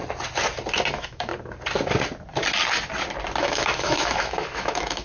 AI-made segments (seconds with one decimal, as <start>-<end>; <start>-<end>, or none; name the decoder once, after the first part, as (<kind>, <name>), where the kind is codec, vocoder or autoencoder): 0.9-1.3 (autoencoder, DAC-VAE); 3.4-5.0